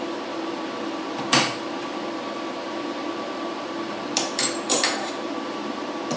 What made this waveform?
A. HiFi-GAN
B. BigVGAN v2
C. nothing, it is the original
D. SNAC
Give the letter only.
B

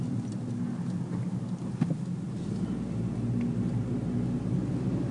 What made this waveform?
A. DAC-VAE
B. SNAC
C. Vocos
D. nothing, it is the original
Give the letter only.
D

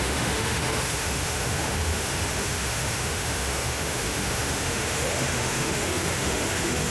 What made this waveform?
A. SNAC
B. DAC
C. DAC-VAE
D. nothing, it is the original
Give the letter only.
C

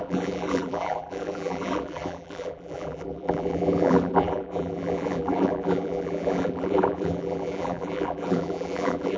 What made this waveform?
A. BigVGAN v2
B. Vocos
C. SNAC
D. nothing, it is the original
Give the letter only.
A